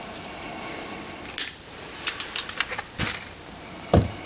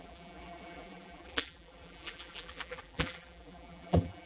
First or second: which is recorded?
first